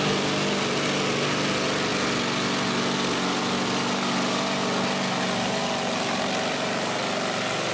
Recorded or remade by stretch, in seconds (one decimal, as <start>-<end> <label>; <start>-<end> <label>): 0.0-7.7 recorded